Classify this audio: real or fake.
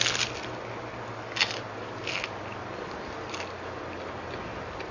real